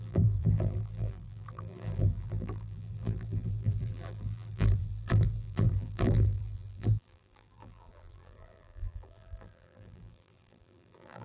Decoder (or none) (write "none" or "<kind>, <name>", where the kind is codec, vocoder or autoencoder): vocoder, BigVGAN v2